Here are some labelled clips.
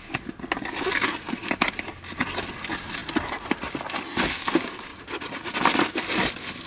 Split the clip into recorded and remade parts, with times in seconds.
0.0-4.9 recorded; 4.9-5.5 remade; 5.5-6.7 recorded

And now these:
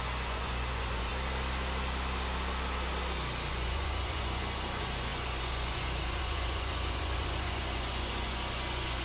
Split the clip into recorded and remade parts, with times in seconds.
0.0-1.1 remade; 1.1-3.5 recorded; 3.5-9.0 remade

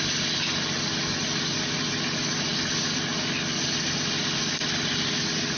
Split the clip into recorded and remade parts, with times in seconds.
0.0-5.6 recorded

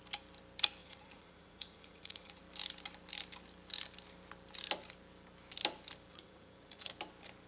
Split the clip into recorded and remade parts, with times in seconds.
0.0-0.8 recorded; 0.8-2.4 remade; 2.4-6.1 recorded; 6.1-6.9 remade; 6.9-7.5 recorded